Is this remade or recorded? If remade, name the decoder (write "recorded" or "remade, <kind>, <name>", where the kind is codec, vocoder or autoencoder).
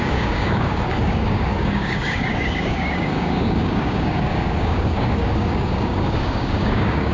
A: remade, codec, DAC